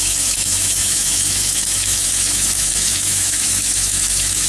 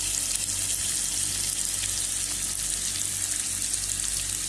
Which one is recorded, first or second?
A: second